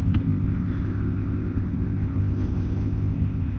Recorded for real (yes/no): no